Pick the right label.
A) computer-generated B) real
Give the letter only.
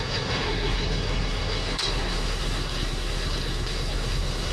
A